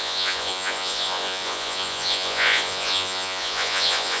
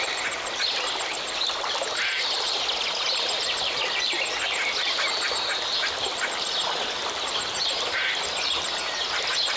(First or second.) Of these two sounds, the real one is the second